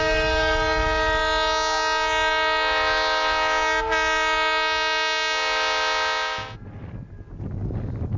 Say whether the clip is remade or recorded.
recorded